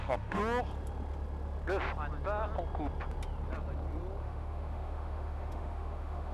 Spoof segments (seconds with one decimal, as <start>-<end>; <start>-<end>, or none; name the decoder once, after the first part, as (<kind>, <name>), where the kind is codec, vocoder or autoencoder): 0.0-0.4 (autoencoder, DAC-VAE); 4.2-6.3

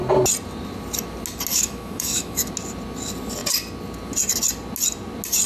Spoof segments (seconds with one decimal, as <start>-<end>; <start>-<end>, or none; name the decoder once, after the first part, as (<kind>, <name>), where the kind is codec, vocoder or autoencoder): 1.5-2.5 (autoencoder, DAC-VAE)

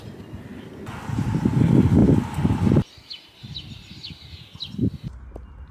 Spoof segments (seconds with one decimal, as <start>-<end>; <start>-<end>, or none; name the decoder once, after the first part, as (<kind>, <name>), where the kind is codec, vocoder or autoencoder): none

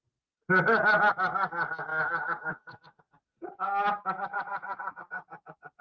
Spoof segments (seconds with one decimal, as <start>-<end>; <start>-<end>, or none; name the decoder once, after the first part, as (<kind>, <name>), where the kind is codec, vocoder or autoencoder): 1.9-3.0 (autoencoder, DAC-VAE)

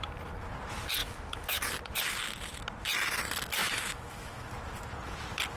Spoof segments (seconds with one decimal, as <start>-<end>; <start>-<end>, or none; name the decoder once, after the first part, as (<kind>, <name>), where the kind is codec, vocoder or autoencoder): 1.0-1.7 (autoencoder, DAC-VAE); 3.6-4.5

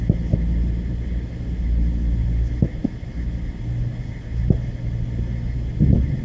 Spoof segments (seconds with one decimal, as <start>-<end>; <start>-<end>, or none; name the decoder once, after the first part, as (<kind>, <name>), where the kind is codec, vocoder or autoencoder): none

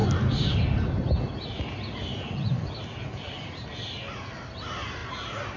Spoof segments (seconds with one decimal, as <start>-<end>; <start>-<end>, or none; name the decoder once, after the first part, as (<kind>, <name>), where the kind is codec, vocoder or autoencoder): none